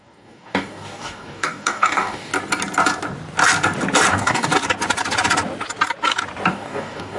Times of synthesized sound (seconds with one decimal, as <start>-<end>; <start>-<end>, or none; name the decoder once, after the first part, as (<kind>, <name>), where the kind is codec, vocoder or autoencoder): 0.0-2.3 (codec, DAC); 4.1-4.5; 6.5-7.2